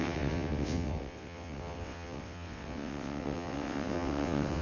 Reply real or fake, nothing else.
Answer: fake